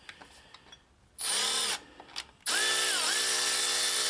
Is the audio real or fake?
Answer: real